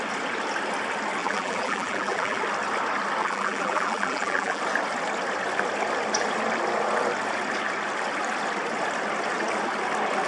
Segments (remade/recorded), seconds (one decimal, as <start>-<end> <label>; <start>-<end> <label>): 0.0-1.2 recorded; 1.2-2.4 remade; 2.4-3.2 recorded; 3.2-4.6 remade; 4.6-10.3 recorded